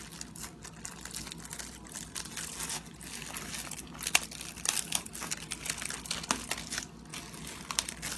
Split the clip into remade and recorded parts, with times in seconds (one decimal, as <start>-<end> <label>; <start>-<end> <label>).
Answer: 0.0-8.2 recorded